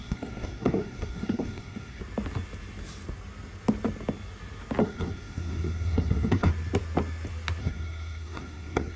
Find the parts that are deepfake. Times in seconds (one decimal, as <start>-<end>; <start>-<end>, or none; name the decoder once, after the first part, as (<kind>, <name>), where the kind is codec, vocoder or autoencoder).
0.0-2.0 (codec, SNAC); 4.8-6.5; 7.6-9.0